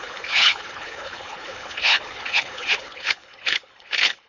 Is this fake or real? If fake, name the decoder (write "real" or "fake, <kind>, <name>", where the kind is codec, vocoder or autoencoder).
fake, codec, HILCodec